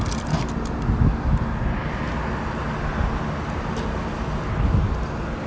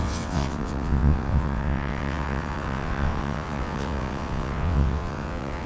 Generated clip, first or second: second